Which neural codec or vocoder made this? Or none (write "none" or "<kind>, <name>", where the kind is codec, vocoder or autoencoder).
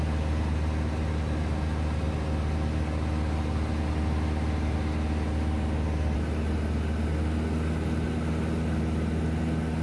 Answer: none